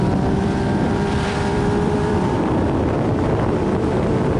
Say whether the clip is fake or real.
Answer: fake